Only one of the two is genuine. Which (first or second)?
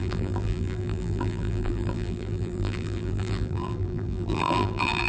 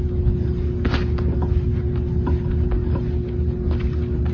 second